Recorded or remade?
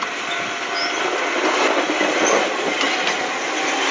recorded